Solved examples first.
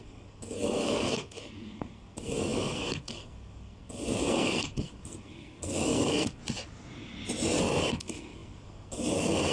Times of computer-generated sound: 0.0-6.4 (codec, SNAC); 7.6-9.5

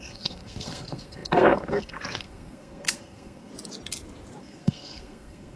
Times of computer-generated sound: 0.0-3.5 (codec, SNAC); 4.4-5.6

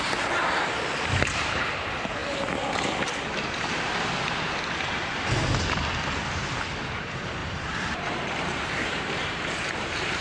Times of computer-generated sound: 0.0-2.2 (vocoder, BigVGAN v2); 7.0-10.2

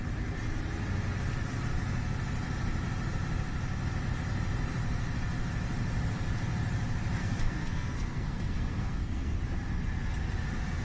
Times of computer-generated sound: 7.2-9.4 (codec, SNAC)

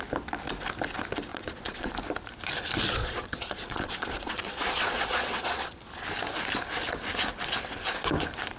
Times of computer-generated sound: 1.3-1.9 (vocoder, Vocos); 2.9-5.9

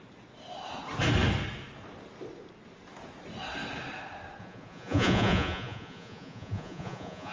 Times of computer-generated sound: 4.4-7.3 (vocoder, Vocos)

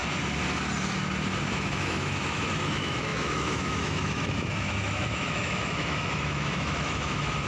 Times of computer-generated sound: 1.5-7.5 (autoencoder, DAC-VAE)

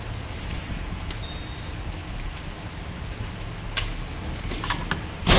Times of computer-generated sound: 2.0-2.7 (vocoder, BigVGAN v2)